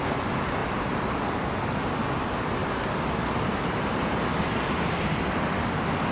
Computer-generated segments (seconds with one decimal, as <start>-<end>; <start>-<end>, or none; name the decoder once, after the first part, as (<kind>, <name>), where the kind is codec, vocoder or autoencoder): 0.6-1.2 (vocoder, BigVGAN v2); 2.6-5.2